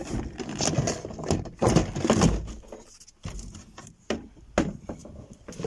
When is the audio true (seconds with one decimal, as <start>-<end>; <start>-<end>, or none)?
0.0-5.7